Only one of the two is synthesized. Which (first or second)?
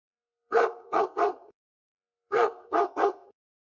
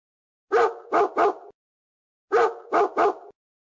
first